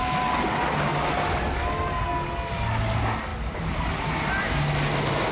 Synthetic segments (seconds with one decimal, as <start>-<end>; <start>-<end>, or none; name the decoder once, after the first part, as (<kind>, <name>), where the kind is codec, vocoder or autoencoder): none